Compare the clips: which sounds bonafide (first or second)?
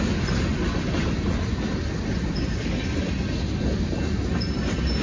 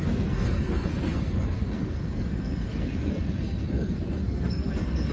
first